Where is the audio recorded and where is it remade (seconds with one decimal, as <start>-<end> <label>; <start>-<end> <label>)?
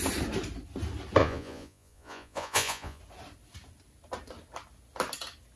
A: 0.0-1.2 recorded; 1.2-3.0 remade; 3.0-5.6 recorded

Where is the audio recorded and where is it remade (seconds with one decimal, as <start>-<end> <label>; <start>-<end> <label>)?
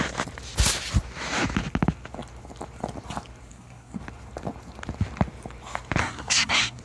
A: 0.0-3.5 recorded; 3.5-4.0 remade; 4.0-6.0 recorded; 6.0-6.8 remade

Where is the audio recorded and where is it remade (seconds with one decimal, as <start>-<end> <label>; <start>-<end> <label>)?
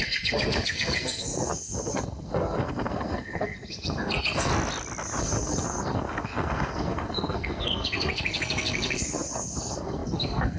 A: 0.0-4.5 remade; 4.5-5.2 recorded; 5.2-10.6 remade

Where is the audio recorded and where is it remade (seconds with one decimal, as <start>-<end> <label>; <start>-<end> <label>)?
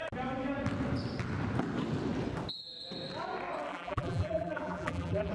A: 0.0-3.7 recorded; 3.7-5.3 remade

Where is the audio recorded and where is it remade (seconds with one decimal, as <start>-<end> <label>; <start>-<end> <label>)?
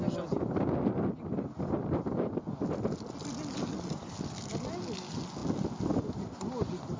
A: 0.0-7.0 recorded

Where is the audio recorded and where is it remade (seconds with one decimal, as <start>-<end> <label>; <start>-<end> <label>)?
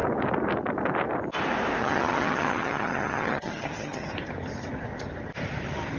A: 0.0-1.8 recorded; 1.8-4.1 remade; 4.1-6.0 recorded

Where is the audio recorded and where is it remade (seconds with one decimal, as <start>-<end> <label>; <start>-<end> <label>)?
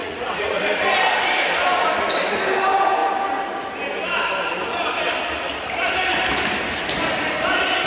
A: 0.0-0.6 remade; 0.6-7.9 recorded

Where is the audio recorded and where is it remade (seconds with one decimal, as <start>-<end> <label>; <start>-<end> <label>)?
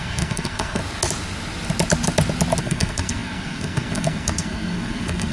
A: 0.0-0.8 remade; 0.8-2.6 recorded; 2.6-5.3 remade